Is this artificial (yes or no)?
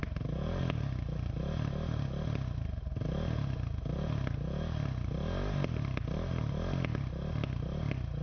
no